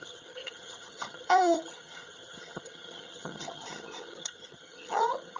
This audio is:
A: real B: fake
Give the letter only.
B